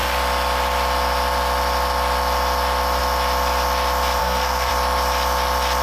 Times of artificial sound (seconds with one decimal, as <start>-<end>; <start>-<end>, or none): 4.2-4.7